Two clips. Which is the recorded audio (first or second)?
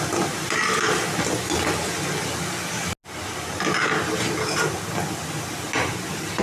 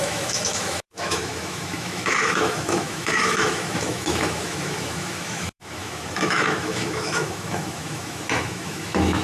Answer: first